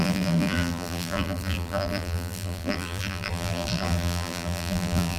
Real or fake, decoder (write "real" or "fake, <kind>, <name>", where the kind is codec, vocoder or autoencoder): fake, vocoder, BigVGAN v2